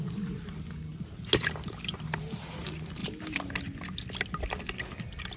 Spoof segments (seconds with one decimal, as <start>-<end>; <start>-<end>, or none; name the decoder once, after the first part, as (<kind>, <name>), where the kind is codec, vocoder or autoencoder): none